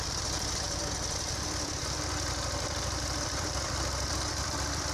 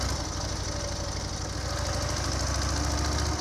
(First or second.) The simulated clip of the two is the first